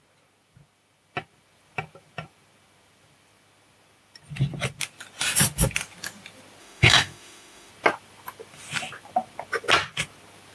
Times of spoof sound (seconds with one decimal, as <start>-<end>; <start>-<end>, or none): 6.6-7.7